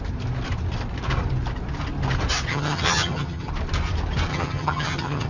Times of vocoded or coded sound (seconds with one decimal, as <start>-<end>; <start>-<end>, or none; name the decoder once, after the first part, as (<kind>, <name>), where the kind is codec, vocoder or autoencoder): 2.5-3.5 (vocoder, HiFi-GAN); 4.3-5.3